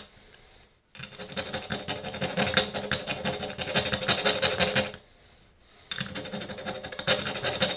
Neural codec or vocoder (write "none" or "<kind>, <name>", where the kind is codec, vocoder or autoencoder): none